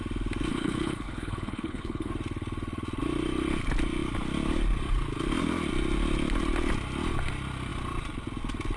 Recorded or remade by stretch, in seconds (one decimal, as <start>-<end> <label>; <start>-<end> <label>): 0.0-0.5 recorded; 0.5-2.1 remade; 2.1-8.8 recorded